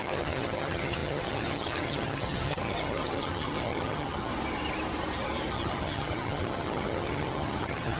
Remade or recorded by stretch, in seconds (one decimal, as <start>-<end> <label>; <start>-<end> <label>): 0.0-4.3 remade; 4.3-5.5 recorded; 5.5-8.0 remade